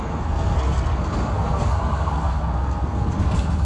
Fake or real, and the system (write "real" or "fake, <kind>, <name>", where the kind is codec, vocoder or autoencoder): fake, codec, SNAC